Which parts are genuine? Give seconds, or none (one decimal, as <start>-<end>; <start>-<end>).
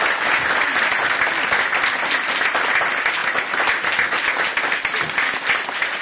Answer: 0.0-6.0